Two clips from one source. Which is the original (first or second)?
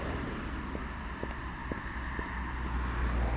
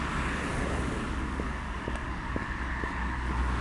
first